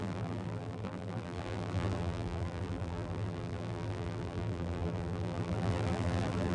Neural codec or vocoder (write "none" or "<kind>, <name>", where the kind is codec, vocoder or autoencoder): vocoder, BigVGAN v2